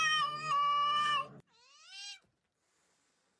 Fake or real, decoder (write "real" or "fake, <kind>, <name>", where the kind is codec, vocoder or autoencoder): real